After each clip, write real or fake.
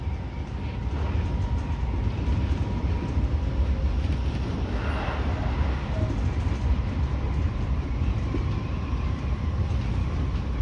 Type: real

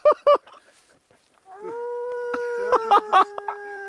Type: fake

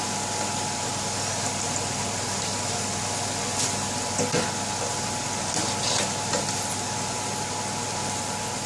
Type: fake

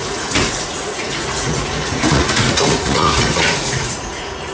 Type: fake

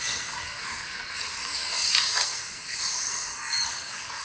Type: fake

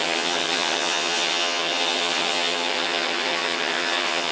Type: fake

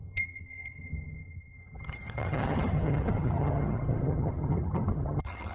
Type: fake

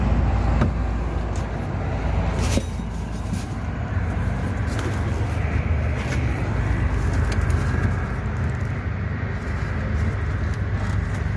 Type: real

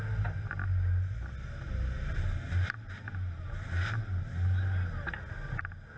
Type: real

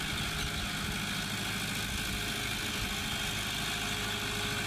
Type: real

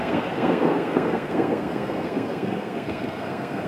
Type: fake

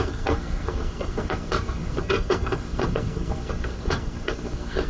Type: fake